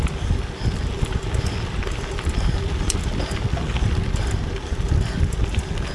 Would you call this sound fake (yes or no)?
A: no